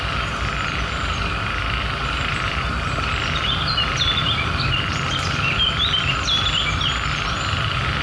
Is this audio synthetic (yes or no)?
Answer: no